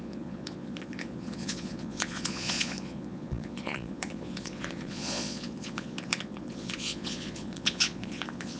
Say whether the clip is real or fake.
fake